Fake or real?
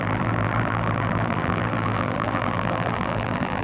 fake